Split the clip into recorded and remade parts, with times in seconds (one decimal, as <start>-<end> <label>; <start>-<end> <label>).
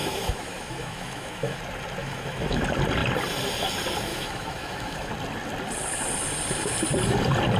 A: 0.0-1.6 remade; 1.6-2.0 recorded; 2.0-2.6 remade; 2.6-4.1 recorded; 4.1-5.1 remade; 5.1-7.6 recorded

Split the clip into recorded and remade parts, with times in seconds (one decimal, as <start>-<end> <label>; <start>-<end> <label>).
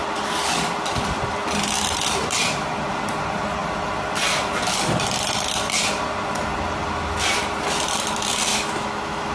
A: 0.0-8.5 recorded; 8.5-9.3 remade